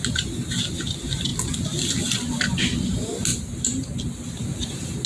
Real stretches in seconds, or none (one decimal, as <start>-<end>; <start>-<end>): 0.0-5.1